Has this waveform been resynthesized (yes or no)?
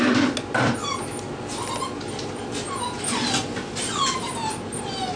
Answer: no